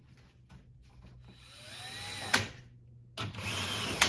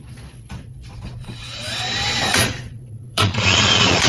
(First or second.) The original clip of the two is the first